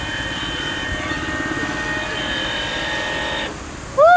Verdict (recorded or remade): recorded